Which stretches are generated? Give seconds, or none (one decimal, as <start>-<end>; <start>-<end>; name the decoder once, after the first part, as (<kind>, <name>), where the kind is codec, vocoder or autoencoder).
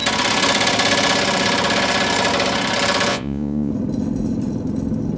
3.1-3.7 (vocoder, Vocos)